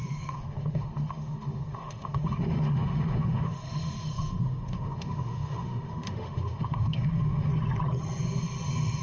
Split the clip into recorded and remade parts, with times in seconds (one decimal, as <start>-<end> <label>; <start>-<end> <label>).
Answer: 0.0-7.5 remade; 7.5-9.0 recorded